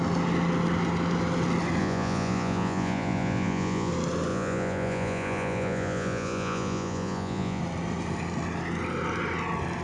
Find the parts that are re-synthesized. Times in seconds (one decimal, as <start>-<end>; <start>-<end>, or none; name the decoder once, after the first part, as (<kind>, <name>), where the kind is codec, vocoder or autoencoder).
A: 1.8-3.9 (vocoder, Vocos); 4.3-7.6